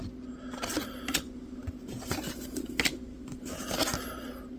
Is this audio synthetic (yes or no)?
no